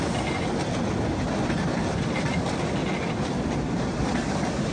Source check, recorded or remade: recorded